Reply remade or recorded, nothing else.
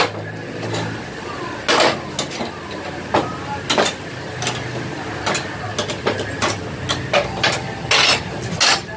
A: recorded